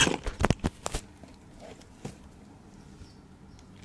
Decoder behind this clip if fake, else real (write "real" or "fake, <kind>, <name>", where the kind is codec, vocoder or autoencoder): real